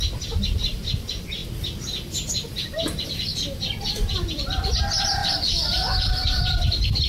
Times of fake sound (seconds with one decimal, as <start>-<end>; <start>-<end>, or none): 0.0-1.4; 2.3-3.3; 3.8-7.1